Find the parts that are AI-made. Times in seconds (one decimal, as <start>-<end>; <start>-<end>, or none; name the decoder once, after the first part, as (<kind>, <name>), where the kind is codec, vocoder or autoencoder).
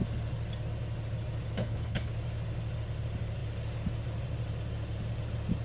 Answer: 1.6-2.1 (codec, HILCodec)